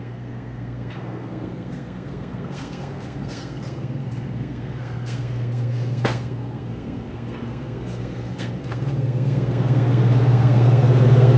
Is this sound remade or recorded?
remade